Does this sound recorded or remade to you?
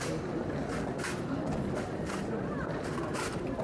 recorded